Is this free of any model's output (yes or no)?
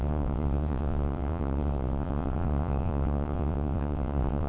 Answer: no